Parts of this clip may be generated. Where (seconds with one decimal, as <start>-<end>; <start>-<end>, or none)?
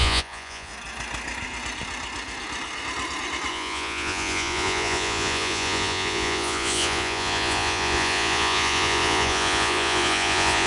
0.0-0.7; 3.5-10.7